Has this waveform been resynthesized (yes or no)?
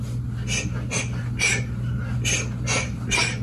no